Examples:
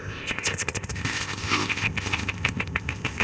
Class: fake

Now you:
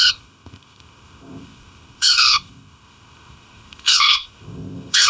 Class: fake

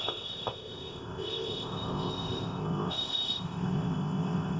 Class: fake